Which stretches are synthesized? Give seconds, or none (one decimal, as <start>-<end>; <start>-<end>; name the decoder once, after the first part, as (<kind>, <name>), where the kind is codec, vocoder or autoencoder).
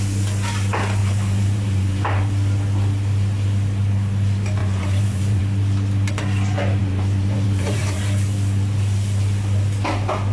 1.0-2.3 (vocoder, BigVGAN v2); 4.6-5.4; 6.8-8.0